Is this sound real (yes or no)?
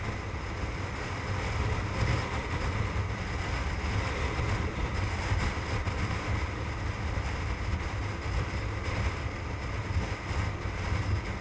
yes